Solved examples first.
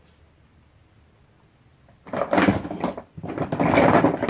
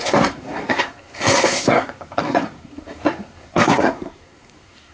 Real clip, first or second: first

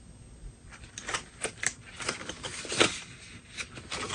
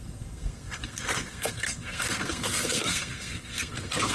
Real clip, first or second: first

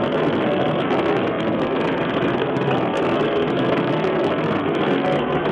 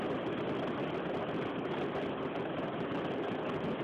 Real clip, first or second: second